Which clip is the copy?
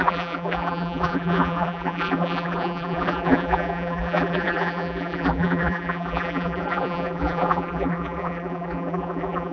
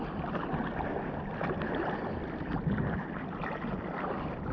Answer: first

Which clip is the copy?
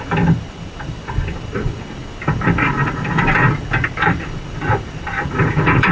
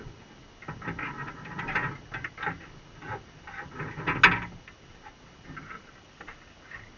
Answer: first